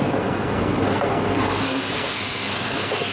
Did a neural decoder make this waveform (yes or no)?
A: yes